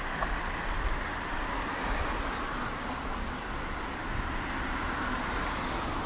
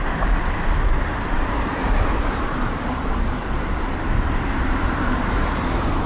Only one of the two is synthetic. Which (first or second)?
second